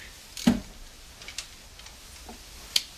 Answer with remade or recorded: recorded